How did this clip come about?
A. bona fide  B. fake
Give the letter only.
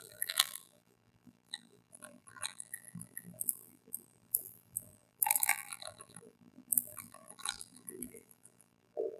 B